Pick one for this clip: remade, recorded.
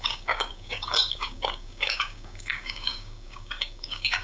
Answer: remade